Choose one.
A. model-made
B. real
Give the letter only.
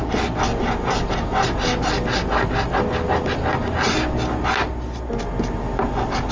B